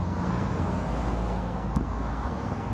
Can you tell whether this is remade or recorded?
remade